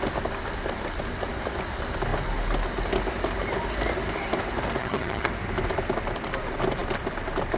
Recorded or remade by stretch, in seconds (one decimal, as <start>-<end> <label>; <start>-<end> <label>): 0.0-4.8 recorded; 4.8-5.3 remade; 5.3-7.6 recorded

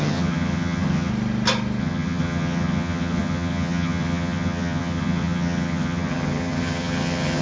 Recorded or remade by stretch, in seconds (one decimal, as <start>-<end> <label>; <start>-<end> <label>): 0.0-1.1 remade; 1.1-1.8 recorded; 1.8-7.4 remade

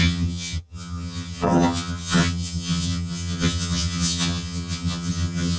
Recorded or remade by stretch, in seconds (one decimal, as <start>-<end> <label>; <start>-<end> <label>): 0.0-5.6 remade

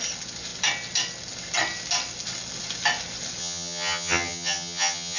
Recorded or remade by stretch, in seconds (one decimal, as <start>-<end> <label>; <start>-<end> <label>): 0.0-3.4 recorded; 3.4-5.2 remade